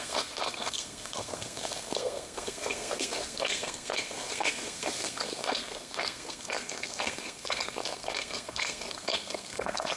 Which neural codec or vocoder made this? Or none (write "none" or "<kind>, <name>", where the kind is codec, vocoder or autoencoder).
codec, SNAC